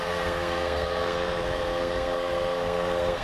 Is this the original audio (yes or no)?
no